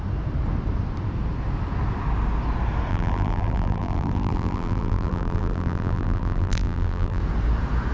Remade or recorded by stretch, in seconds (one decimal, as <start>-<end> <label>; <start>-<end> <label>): 0.0-2.9 recorded; 2.9-7.2 remade; 7.2-7.9 recorded